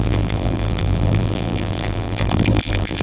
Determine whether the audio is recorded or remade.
remade